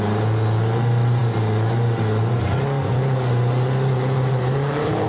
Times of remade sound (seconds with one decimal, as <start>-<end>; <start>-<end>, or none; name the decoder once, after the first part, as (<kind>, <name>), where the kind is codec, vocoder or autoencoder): none